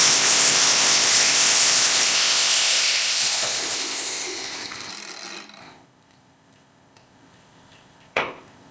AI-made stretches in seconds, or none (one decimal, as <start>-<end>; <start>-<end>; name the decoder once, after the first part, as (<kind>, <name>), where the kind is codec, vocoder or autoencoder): 0.0-4.9 (codec, ZipCodec); 5.6-8.7